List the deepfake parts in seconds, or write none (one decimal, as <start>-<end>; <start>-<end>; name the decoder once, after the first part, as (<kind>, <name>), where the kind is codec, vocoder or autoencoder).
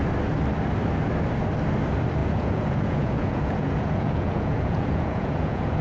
2.2-5.8 (vocoder, Vocos)